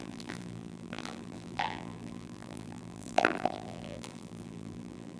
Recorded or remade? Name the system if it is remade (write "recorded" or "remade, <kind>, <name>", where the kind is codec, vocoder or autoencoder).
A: remade, vocoder, BigVGAN v2